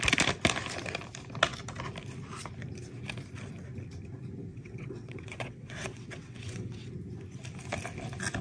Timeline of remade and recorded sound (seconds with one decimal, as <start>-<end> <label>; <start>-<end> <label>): 0.0-4.5 recorded; 4.5-6.9 remade; 6.9-8.4 recorded